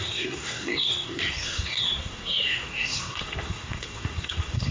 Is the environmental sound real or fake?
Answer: fake